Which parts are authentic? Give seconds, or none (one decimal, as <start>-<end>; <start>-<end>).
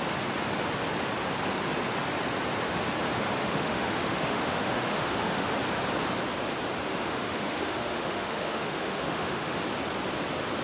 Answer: 0.0-3.4; 5.5-6.9; 9.6-10.6